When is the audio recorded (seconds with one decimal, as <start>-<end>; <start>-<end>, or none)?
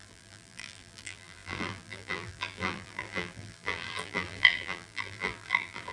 none